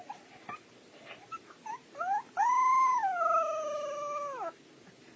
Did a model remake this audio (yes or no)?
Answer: no